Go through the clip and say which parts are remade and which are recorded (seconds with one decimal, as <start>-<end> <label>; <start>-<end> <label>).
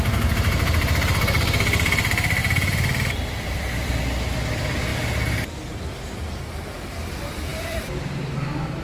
0.0-2.4 recorded; 2.4-3.9 remade; 3.9-7.5 recorded; 7.5-8.2 remade; 8.2-8.8 recorded